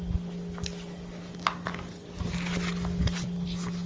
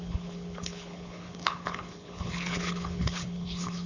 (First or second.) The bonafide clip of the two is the first